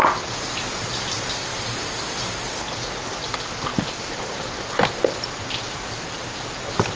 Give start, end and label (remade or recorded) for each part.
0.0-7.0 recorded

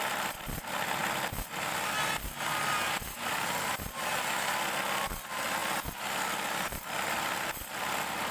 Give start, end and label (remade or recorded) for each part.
0.0-8.3 recorded

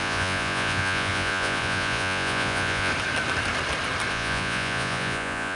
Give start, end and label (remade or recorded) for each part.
0.0-2.9 remade; 2.9-4.1 recorded; 4.1-5.6 remade

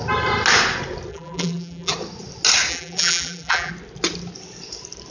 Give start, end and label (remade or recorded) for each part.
0.0-1.1 recorded; 1.1-1.9 remade; 1.9-2.7 recorded; 2.7-3.7 remade; 3.7-5.1 recorded

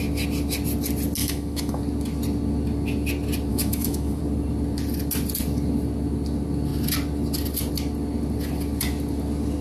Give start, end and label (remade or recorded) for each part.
0.0-1.2 recorded; 1.2-1.8 remade; 1.8-3.5 recorded; 3.5-4.2 remade; 4.2-9.6 recorded

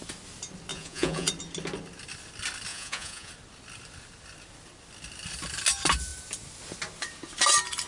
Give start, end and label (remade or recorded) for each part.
0.0-0.7 recorded; 0.7-1.3 remade; 1.3-2.7 recorded; 2.7-3.3 remade; 3.3-7.9 recorded